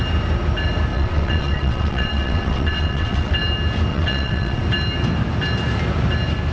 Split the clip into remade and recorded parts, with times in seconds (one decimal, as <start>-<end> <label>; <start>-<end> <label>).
0.0-0.9 recorded; 0.9-3.3 remade; 3.3-3.9 recorded; 3.9-4.6 remade; 4.6-6.5 recorded